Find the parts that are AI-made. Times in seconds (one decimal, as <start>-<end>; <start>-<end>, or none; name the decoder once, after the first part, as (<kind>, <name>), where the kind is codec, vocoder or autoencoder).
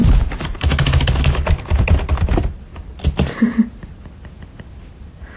1.1-2.7 (vocoder, BigVGAN v2); 3.7-5.4